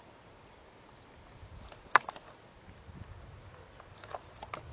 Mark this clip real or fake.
real